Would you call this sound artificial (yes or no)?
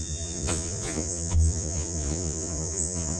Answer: yes